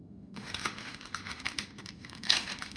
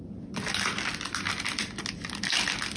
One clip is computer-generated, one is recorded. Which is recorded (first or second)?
second